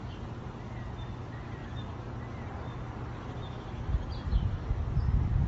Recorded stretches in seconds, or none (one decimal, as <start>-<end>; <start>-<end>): 0.0-5.5